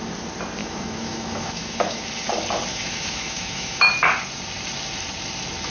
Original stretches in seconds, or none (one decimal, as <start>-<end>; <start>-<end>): 0.0-0.6; 2.0-2.7; 3.9-5.7